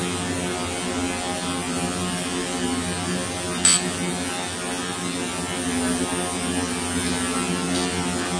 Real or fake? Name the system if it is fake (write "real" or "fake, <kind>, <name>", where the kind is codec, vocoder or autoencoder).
real